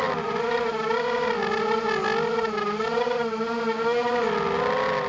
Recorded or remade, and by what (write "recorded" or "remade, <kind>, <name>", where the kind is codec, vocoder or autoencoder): recorded